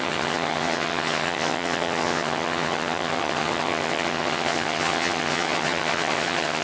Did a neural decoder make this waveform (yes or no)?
yes